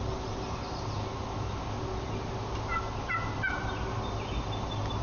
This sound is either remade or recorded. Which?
recorded